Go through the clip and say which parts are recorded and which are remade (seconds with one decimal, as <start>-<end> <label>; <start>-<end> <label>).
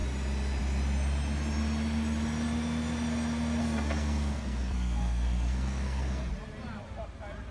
0.0-3.6 recorded; 3.6-6.3 remade; 6.3-7.5 recorded